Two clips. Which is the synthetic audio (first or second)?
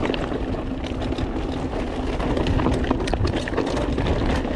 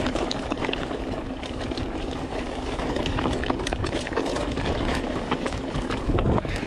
second